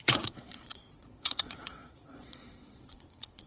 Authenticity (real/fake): fake